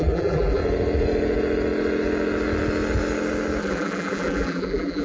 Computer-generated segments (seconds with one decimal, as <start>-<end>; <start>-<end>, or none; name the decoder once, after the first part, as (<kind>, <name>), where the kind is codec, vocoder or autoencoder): 0.0-0.6 (vocoder, BigVGAN v2); 3.6-5.0